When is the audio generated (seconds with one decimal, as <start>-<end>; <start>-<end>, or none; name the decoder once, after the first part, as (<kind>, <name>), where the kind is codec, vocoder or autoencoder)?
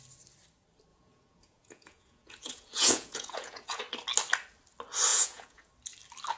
0.9-3.8 (vocoder, Vocos); 5.1-5.7